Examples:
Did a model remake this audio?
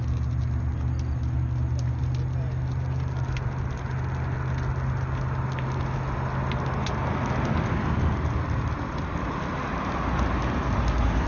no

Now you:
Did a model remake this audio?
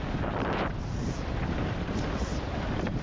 no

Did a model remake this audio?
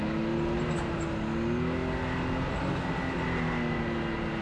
no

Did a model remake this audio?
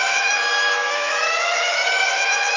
yes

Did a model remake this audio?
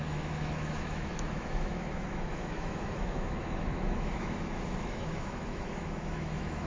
yes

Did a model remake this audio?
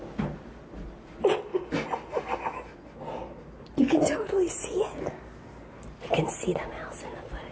no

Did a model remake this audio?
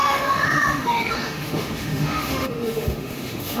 yes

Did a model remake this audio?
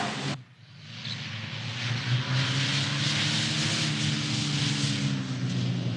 no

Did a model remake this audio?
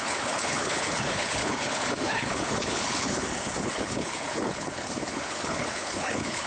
yes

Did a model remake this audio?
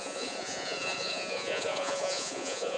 yes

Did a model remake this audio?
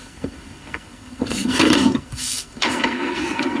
yes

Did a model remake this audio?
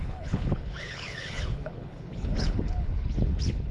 yes